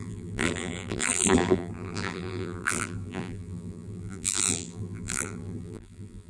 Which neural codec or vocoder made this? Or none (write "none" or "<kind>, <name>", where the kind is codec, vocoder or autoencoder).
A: vocoder, BigVGAN v2